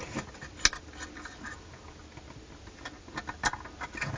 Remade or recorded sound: recorded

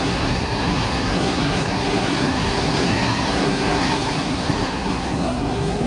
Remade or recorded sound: remade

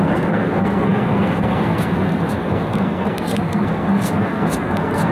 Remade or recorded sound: remade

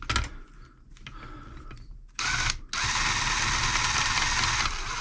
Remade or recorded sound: recorded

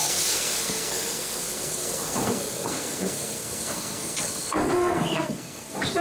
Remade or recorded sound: remade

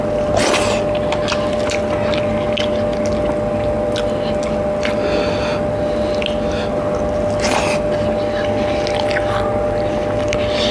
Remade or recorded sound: recorded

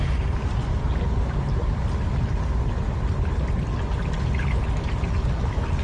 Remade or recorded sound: recorded